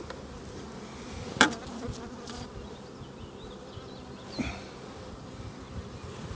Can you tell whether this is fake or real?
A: real